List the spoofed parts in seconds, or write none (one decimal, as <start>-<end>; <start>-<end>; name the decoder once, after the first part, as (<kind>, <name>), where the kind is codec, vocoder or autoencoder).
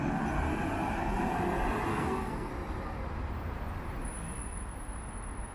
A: 1.9-2.5 (codec, SNAC)